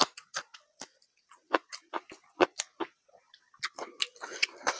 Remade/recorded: recorded